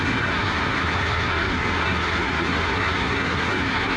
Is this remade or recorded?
remade